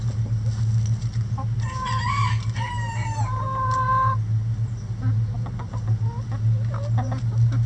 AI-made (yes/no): no